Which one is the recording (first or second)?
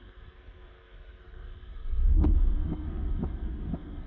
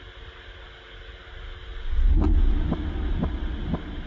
second